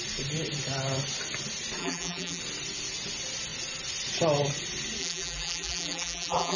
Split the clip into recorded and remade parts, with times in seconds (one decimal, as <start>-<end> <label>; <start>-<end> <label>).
0.0-1.8 recorded; 1.8-2.4 remade; 2.4-5.0 recorded; 5.0-6.6 remade

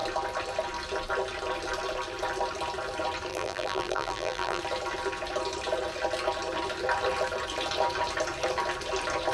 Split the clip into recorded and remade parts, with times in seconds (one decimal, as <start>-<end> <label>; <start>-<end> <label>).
0.0-3.3 recorded; 3.3-4.6 remade; 4.6-9.3 recorded